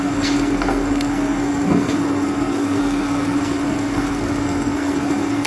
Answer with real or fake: fake